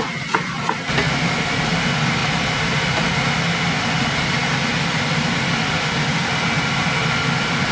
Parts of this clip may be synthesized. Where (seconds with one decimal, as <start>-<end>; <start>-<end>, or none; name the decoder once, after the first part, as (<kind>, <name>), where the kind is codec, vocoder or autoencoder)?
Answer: none